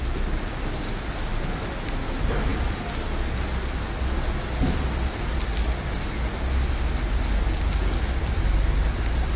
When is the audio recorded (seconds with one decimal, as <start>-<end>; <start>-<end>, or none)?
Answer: 0.0-9.4